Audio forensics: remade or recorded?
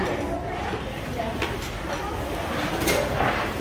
recorded